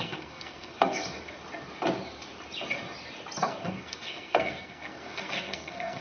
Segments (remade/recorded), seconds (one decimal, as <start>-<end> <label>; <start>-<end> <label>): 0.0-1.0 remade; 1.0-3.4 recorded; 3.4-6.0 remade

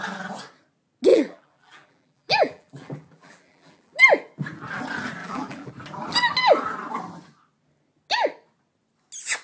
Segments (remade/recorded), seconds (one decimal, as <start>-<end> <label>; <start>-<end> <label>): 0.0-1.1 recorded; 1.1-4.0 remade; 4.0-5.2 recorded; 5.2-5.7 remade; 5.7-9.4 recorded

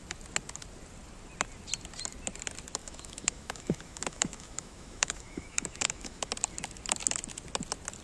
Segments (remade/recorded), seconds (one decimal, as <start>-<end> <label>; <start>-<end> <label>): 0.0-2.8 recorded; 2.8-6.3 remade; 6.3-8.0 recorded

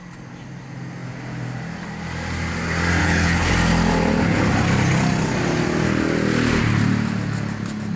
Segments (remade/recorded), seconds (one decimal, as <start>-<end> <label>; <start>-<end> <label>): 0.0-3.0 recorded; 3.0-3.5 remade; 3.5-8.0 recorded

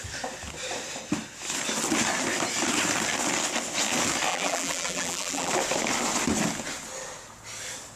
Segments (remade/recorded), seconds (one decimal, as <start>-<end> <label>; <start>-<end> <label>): 0.0-4.3 recorded; 4.3-5.5 remade; 5.5-8.0 recorded